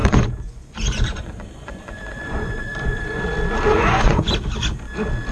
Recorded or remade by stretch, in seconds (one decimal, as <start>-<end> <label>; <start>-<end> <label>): 0.0-3.2 remade; 3.2-3.7 recorded; 3.7-4.3 remade; 4.3-5.3 recorded